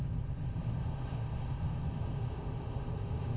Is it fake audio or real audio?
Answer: fake